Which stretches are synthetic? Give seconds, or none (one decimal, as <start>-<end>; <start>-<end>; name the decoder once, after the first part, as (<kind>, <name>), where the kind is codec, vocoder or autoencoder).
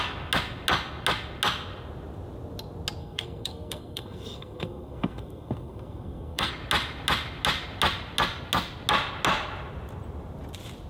3.0-6.5 (codec, SNAC)